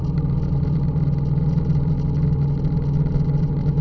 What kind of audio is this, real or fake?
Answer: real